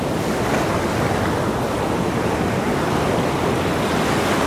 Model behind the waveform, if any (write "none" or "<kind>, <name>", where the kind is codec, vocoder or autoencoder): none